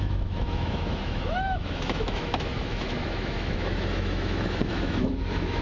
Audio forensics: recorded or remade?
remade